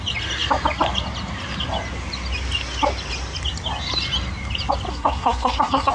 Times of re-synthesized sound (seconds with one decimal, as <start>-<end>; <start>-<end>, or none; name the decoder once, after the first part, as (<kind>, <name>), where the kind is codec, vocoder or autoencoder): 4.9-5.9 (codec, SNAC)